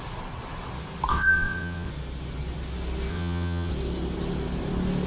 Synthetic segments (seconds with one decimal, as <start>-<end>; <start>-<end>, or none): 1.1-1.9; 3.1-3.7